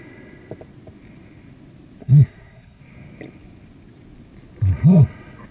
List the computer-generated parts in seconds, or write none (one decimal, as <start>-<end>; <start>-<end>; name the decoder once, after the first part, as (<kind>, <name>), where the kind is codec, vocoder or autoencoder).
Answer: 2.0-2.8 (codec, SNAC)